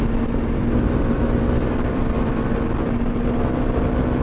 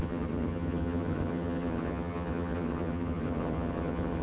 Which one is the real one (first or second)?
first